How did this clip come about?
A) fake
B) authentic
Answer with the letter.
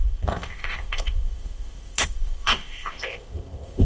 A